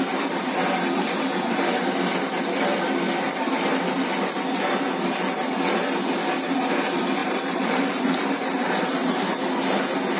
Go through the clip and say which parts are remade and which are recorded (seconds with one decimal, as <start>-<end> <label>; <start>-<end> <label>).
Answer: 0.0-7.2 recorded; 7.2-9.3 remade; 9.3-10.2 recorded